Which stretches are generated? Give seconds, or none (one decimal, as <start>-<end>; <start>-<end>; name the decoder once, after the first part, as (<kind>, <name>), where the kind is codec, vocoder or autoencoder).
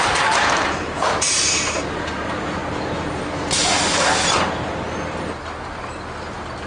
0.0-2.6 (vocoder, BigVGAN v2)